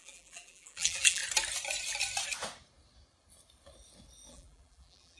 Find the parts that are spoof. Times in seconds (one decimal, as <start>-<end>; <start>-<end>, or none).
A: 0.0-1.2; 4.3-5.2